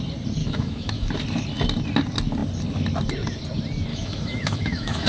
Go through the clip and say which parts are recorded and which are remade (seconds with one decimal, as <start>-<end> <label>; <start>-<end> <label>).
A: 0.0-0.4 recorded; 0.4-1.1 remade; 1.1-3.9 recorded; 3.9-5.1 remade